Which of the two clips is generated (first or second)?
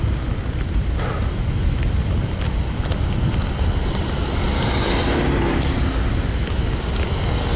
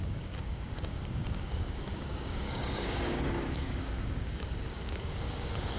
second